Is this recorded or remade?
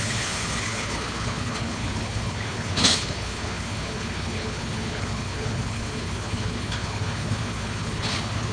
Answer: remade